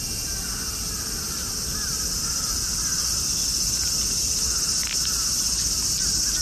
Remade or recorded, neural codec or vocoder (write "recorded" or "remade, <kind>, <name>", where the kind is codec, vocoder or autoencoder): recorded